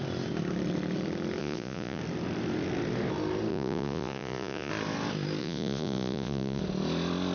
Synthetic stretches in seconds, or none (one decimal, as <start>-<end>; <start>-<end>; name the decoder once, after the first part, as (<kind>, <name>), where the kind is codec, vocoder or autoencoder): 1.4-2.0 (vocoder, Vocos); 3.5-4.7; 5.4-6.6